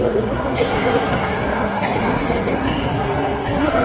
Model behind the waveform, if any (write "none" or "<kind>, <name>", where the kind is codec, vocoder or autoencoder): codec, SNAC